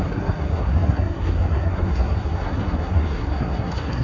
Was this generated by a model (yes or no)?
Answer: yes